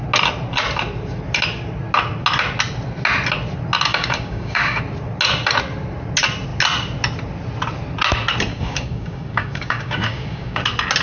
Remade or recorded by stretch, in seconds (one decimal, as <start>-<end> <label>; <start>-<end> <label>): 0.0-3.9 recorded; 3.9-4.8 remade; 4.8-8.5 recorded; 8.5-10.6 remade; 10.6-11.0 recorded